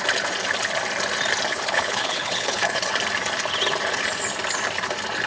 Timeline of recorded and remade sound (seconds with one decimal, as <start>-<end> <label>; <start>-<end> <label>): 0.0-1.5 recorded; 1.5-2.9 remade; 2.9-5.3 recorded